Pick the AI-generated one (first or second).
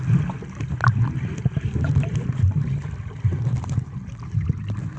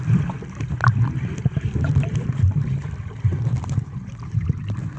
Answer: second